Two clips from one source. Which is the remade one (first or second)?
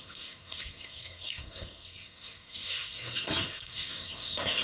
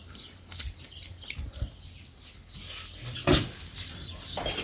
first